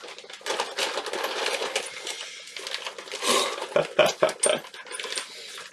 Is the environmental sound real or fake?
real